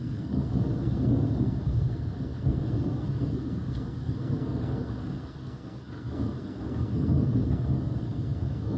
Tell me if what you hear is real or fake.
fake